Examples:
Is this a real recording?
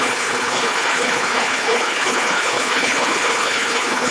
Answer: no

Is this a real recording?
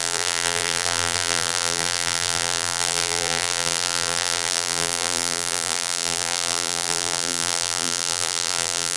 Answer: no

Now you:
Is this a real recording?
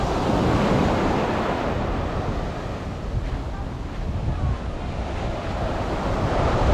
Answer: yes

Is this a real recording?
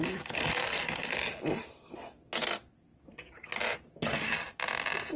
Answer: yes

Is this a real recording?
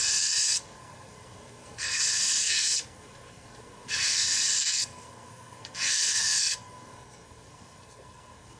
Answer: no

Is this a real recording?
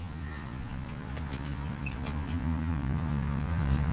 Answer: no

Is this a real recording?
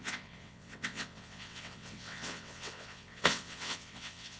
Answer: no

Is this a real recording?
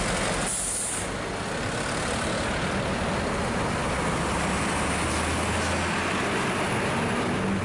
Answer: yes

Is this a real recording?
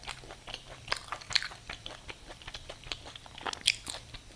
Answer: yes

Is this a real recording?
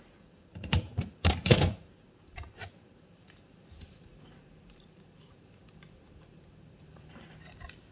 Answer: no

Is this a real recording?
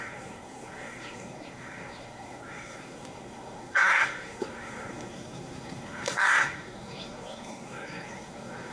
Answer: no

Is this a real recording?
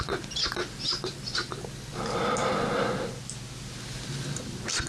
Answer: yes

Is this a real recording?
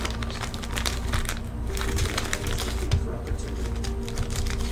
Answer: yes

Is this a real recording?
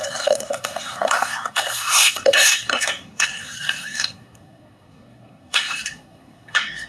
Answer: no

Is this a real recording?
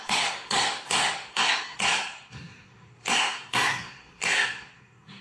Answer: no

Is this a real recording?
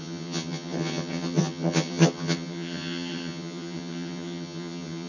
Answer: no